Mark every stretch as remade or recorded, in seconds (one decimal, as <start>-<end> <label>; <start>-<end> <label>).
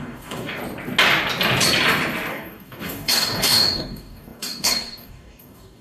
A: 0.0-0.6 remade; 0.6-2.3 recorded; 2.3-5.8 remade